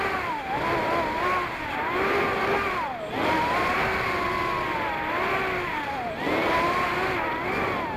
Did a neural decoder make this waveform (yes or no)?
no